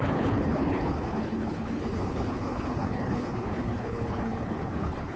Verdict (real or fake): fake